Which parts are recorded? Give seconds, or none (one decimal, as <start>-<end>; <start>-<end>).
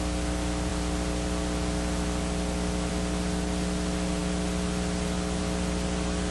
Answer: 0.0-6.3